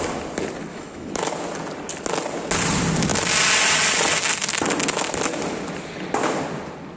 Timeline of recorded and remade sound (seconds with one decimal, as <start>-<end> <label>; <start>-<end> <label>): 0.0-0.7 recorded; 0.7-1.3 remade; 1.3-7.0 recorded